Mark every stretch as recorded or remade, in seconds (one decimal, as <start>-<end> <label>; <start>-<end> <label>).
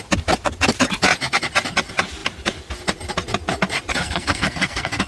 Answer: 0.0-3.9 recorded; 3.9-5.1 remade